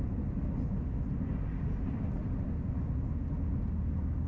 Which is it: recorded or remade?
recorded